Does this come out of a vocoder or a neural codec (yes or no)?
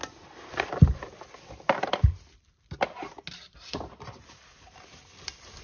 no